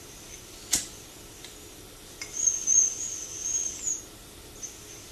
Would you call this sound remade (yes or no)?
no